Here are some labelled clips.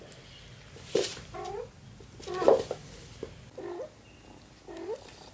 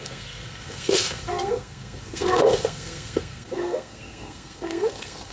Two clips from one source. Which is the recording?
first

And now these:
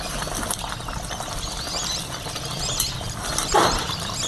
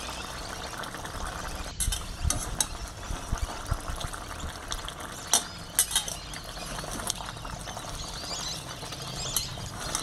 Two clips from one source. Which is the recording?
second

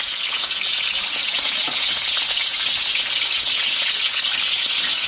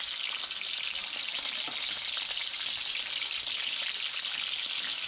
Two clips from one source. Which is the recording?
second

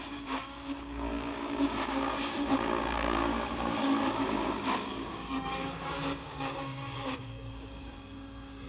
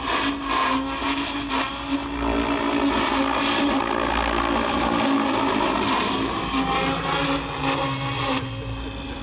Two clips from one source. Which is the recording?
second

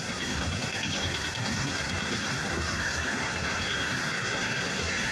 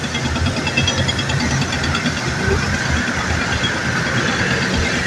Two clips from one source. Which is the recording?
second